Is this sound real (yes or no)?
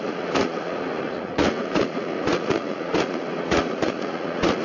no